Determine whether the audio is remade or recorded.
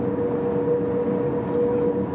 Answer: recorded